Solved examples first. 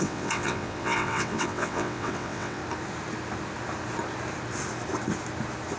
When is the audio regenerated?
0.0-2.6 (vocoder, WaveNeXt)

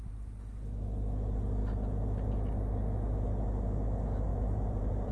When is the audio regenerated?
4.3-5.1 (vocoder, BigVGAN v2)

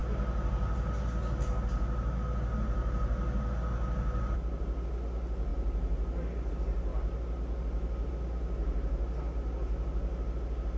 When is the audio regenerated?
none

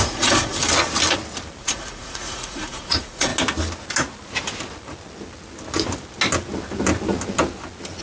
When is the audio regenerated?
0.0-0.6 (vocoder, Vocos); 1.6-3.3

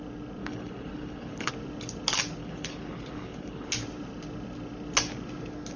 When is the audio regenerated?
0.4-1.5 (codec, HILCodec); 2.4-3.7

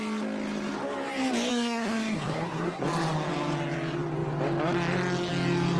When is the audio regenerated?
1.5-2.8 (codec, SNAC)

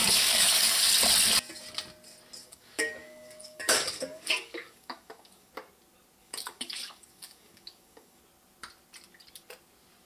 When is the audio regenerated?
0.0-0.8 (codec, DAC); 2.4-5.5; 6.2-8.2